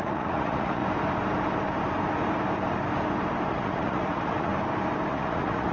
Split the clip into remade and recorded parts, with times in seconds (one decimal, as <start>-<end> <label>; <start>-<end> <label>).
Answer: 0.0-0.8 remade; 0.8-3.5 recorded; 3.5-4.5 remade; 4.5-5.1 recorded; 5.1-5.7 remade